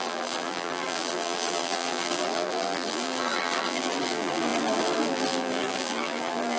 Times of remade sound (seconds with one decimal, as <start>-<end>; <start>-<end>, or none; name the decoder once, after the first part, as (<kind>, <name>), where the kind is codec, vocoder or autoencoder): 0.0-6.6 (vocoder, BigVGAN v2)

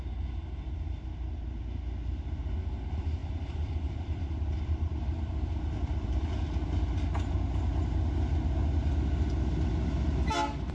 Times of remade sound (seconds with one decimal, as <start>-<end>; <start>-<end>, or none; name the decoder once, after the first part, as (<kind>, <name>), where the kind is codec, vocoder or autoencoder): 3.2-6.3 (vocoder, BigVGAN v2)

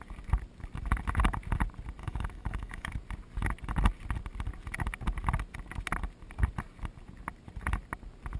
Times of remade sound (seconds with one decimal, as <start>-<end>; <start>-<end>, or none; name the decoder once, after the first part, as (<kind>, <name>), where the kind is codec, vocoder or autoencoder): 2.0-2.9 (autoencoder, DAC-VAE)

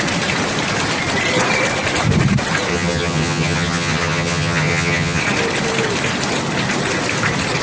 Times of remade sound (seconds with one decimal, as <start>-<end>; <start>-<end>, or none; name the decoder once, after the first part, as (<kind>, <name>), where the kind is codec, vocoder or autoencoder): 2.7-5.2 (vocoder, HiFi-GAN)

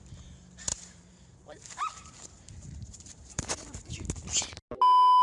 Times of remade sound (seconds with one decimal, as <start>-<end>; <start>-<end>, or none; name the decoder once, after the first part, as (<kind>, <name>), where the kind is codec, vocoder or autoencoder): 0.7-3.4 (vocoder, BigVGAN v2)